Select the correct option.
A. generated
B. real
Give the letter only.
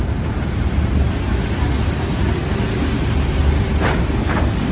B